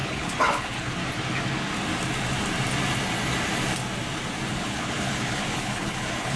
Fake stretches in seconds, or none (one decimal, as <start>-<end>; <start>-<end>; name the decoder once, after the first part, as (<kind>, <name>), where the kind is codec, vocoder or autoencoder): 0.0-1.0 (codec, HILCodec); 4.5-6.4